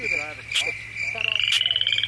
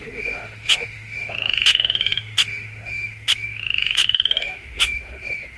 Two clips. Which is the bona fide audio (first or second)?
first